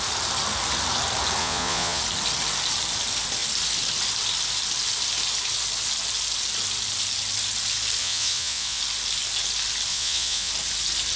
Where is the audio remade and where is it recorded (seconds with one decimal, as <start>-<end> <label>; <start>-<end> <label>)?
0.0-1.4 recorded; 1.4-2.0 remade; 2.0-8.0 recorded; 8.0-8.8 remade; 8.8-9.9 recorded; 9.9-10.5 remade; 10.5-11.2 recorded